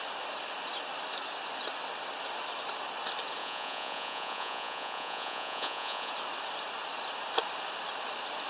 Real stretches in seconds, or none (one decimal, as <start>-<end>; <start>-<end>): 0.0-3.4; 6.1-8.5